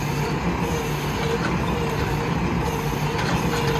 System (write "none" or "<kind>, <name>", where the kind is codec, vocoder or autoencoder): none